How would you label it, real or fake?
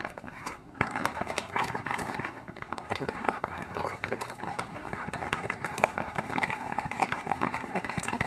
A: fake